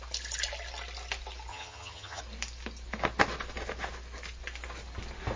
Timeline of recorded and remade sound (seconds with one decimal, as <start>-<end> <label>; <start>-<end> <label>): 0.0-1.5 recorded; 1.5-2.2 remade; 2.2-5.4 recorded